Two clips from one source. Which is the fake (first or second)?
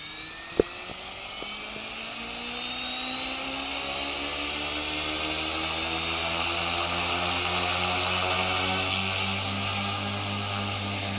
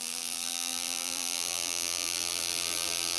second